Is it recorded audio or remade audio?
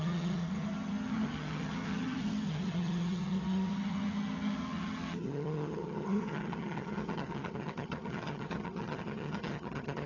remade